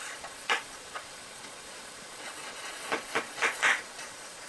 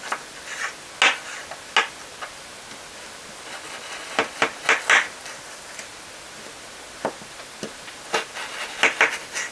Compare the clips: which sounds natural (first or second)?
second